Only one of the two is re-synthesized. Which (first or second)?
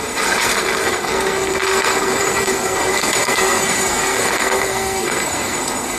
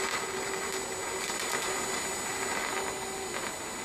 first